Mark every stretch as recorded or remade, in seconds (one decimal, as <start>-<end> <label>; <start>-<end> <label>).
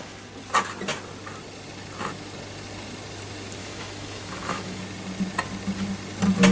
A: 0.0-3.6 recorded; 3.6-4.8 remade; 4.8-6.5 recorded